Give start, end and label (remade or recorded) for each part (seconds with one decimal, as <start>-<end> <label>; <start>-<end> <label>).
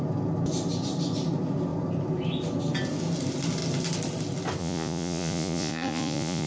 0.0-4.6 recorded; 4.6-6.5 remade